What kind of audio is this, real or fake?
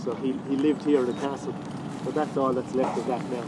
real